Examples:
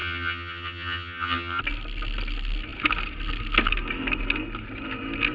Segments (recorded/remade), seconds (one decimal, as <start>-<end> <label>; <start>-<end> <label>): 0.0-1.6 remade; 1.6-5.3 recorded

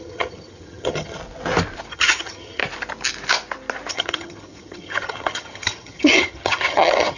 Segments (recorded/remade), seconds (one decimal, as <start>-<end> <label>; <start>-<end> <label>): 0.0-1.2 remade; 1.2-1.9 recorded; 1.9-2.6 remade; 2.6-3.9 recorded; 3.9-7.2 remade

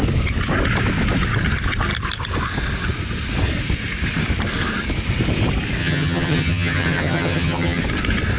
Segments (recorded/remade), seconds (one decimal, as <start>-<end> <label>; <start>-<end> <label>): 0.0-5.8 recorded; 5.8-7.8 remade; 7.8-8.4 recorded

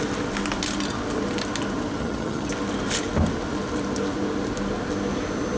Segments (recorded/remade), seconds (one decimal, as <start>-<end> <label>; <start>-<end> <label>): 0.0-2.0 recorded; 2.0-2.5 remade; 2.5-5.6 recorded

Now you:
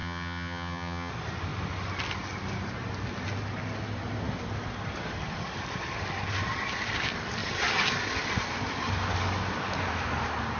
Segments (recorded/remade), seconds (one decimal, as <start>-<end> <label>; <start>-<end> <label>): 0.0-1.1 remade; 1.1-10.6 recorded